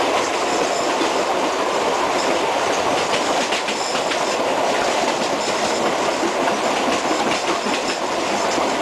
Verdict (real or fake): real